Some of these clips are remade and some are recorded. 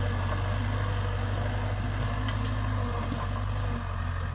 recorded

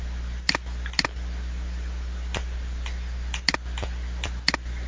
recorded